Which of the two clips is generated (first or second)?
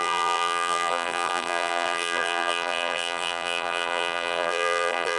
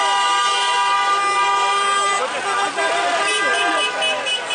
first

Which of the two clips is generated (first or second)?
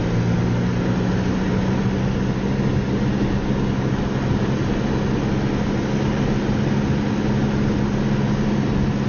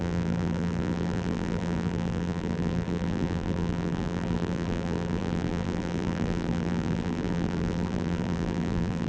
second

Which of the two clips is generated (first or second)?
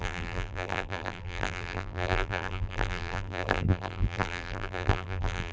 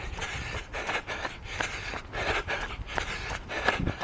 first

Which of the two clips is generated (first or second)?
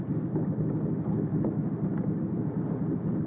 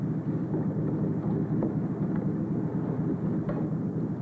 first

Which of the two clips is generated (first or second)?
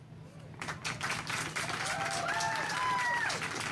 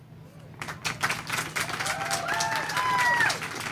first